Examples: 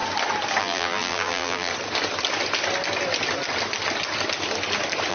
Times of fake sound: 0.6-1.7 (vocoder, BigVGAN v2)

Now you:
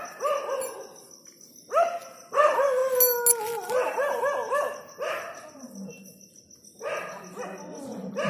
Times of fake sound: none

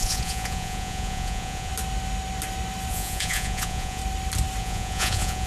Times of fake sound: 0.0-1.7 (vocoder, Vocos); 2.9-4.0; 4.6-5.5

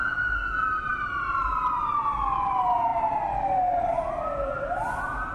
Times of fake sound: none